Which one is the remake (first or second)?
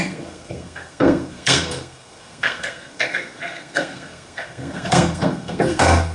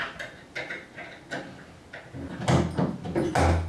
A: first